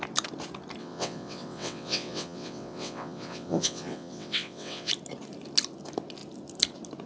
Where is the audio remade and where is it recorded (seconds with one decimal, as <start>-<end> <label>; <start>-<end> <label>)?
0.0-0.8 recorded; 0.8-4.9 remade; 4.9-7.1 recorded